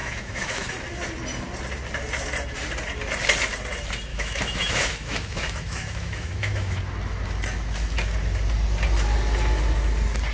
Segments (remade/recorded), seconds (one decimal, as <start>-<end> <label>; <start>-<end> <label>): 0.0-0.7 remade; 0.7-4.1 recorded; 4.1-6.8 remade; 6.8-10.3 recorded